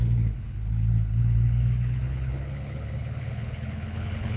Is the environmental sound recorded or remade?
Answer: remade